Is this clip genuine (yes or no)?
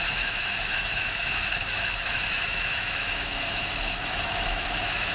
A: no